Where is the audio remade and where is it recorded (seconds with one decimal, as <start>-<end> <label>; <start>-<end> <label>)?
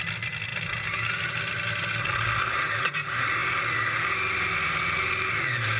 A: 0.0-5.8 recorded